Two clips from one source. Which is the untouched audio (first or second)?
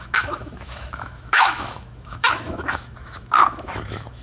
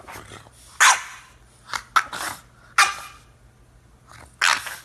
second